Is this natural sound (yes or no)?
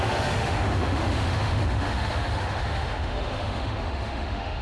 no